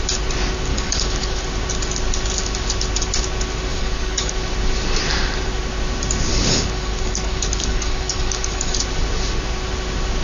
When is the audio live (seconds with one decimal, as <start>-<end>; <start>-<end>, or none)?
0.0-0.7; 1.4-3.7; 4.3-6.3; 8.8-10.2